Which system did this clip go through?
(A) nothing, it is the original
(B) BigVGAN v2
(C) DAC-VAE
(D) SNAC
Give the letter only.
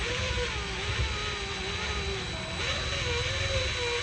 A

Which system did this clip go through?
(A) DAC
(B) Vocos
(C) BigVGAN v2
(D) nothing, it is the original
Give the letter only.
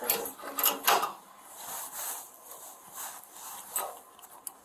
D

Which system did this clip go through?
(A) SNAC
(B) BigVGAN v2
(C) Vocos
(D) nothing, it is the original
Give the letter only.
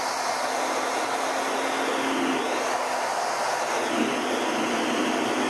D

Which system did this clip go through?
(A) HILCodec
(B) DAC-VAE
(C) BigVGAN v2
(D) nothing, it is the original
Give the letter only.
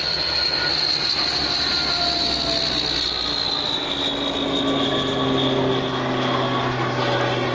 D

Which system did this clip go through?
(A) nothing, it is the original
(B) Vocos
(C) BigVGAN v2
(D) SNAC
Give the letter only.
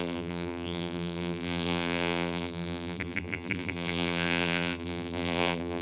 C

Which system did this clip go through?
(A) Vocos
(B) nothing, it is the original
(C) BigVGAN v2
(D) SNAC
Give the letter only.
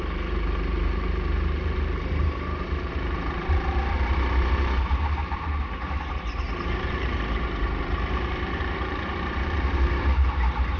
C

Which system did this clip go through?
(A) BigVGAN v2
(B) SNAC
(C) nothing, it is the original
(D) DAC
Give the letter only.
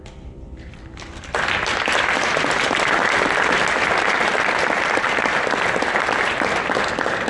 A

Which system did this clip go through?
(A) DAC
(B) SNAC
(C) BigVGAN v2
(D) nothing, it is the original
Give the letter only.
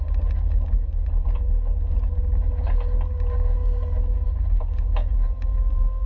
D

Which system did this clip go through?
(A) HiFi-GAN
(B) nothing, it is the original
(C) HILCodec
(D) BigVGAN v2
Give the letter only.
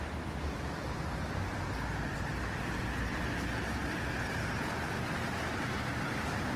D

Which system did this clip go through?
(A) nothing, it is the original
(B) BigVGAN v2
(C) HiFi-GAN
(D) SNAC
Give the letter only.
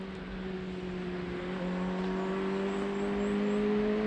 A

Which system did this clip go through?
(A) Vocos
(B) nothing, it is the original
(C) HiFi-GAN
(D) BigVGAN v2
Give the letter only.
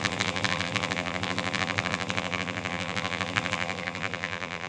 D